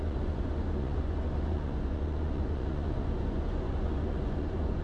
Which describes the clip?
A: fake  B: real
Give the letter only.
A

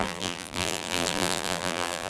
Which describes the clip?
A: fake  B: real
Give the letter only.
A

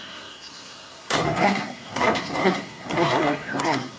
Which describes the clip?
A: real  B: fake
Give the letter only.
B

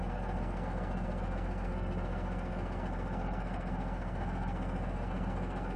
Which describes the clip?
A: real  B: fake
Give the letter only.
B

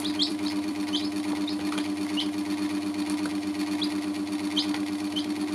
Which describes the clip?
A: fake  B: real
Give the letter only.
A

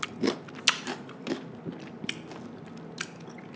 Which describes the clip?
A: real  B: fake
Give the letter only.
A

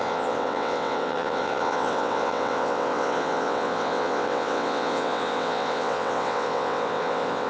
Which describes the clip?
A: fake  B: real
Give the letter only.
A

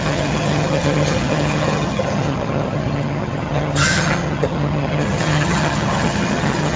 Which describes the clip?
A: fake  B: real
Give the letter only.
A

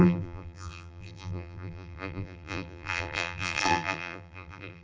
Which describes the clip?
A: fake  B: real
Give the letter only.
A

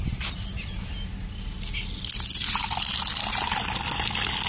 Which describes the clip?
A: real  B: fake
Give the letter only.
A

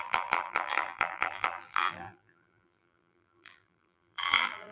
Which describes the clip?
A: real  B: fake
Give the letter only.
B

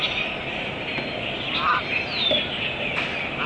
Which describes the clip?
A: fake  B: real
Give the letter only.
B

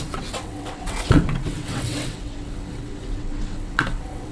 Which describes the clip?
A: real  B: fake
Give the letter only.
B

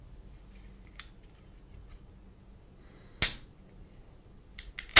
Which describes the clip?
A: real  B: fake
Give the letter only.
A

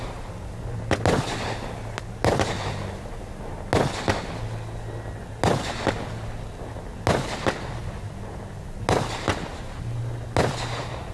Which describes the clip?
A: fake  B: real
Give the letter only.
B